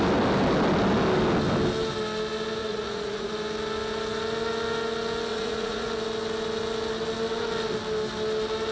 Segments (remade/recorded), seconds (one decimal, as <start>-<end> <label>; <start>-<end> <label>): 0.0-2.6 recorded; 2.6-3.3 remade; 3.3-5.3 recorded; 5.3-5.9 remade; 5.9-8.7 recorded